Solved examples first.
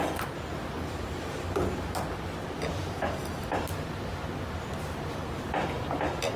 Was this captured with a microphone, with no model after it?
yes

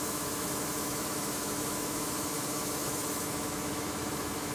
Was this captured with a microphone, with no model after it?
no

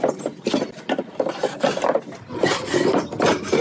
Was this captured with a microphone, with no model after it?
yes